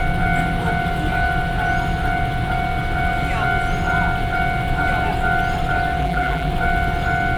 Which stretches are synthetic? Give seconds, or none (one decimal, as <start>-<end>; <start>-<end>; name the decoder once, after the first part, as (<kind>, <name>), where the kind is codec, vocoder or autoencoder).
6.0-6.5 (vocoder, BigVGAN v2)